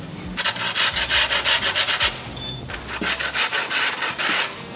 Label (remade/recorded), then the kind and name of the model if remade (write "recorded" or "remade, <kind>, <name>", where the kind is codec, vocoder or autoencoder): recorded